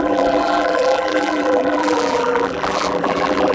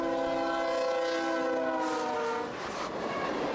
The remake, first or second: first